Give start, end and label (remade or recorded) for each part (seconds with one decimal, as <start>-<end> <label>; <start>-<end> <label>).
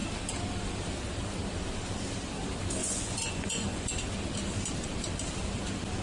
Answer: 0.0-2.8 recorded; 2.8-3.9 remade; 3.9-6.0 recorded